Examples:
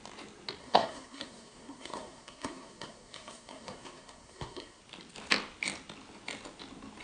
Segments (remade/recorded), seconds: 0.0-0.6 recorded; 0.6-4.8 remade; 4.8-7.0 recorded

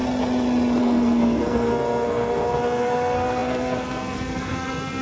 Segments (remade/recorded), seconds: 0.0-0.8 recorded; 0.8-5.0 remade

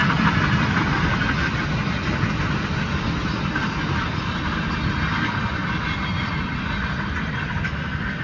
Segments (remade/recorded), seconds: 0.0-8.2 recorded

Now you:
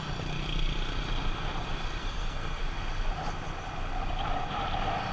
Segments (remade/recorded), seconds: 0.0-2.0 recorded; 2.0-2.6 remade; 2.6-5.1 recorded

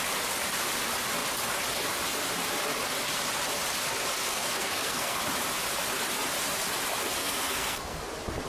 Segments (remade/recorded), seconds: 0.0-4.3 recorded; 4.3-5.2 remade; 5.2-7.2 recorded; 7.2-8.0 remade; 8.0-8.5 recorded

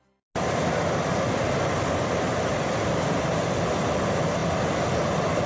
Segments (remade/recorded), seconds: 0.0-5.5 recorded

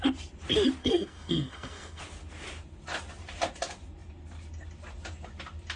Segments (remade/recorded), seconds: 0.0-0.8 recorded; 0.8-2.0 remade; 2.0-5.8 recorded